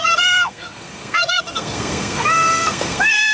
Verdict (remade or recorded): remade